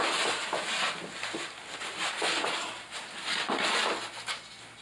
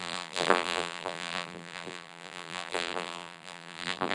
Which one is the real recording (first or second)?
first